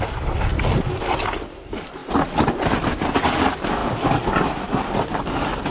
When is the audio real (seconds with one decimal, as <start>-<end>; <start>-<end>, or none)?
0.0-5.7